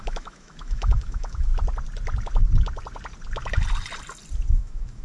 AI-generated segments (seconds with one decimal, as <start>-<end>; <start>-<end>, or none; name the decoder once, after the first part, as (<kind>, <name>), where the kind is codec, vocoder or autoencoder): 0.0-1.5 (autoencoder, DAC-VAE); 4.5-5.0